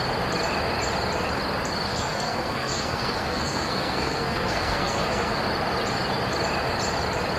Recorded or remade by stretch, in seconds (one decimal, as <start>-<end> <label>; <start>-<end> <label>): 0.0-1.9 recorded; 1.9-5.4 remade; 5.4-7.4 recorded